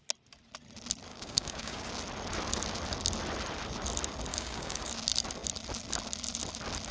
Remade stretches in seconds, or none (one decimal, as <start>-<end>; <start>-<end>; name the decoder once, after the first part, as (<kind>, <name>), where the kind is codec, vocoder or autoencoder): 1.1-1.9 (codec, DAC); 4.3-4.9